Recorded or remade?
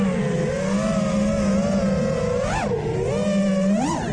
recorded